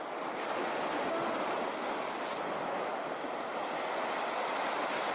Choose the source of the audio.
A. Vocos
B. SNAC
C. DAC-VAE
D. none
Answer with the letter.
D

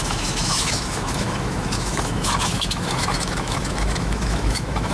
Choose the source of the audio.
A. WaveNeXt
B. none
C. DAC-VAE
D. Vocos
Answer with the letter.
C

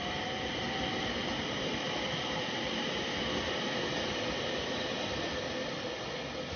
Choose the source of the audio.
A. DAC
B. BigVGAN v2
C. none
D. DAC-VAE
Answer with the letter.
C